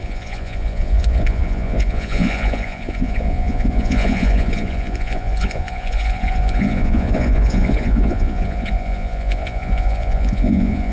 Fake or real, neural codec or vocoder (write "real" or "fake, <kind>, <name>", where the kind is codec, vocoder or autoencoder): fake, vocoder, Vocos